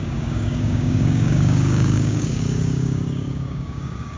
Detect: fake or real fake